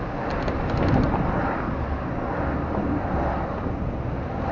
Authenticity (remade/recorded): recorded